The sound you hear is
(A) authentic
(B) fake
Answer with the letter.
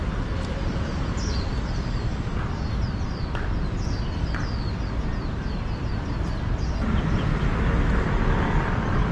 A